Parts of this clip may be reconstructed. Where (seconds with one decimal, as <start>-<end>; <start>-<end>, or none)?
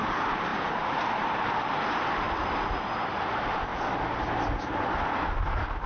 0.0-3.7; 4.6-5.9